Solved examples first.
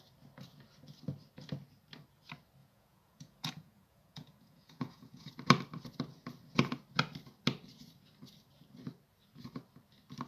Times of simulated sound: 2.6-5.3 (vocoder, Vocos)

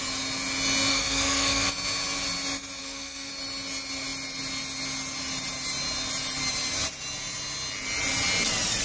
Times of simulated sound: 0.9-1.7 (codec, SNAC); 2.8-3.3

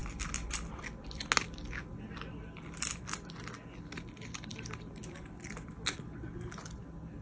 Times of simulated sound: none

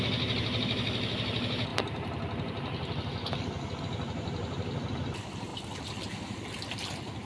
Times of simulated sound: none

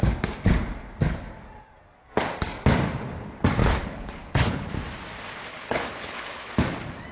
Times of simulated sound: 3.6-4.7 (codec, HILCodec); 5.5-6.5

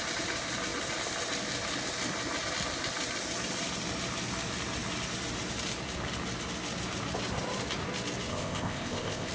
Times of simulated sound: 8.3-9.3 (codec, ZipCodec)

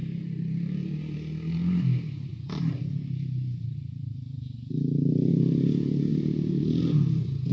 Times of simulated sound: 2.3-5.3 (vocoder, BigVGAN v2); 6.1-7.5

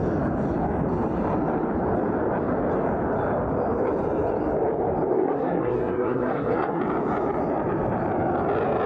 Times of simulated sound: 5.1-6.8 (codec, SNAC)